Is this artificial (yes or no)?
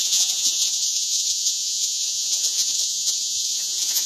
yes